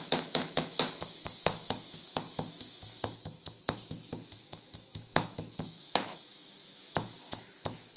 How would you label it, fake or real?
fake